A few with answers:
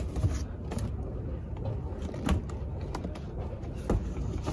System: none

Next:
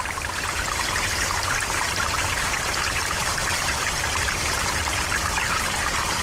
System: vocoder, BigVGAN v2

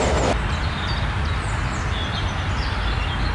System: none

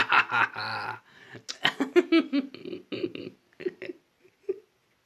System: none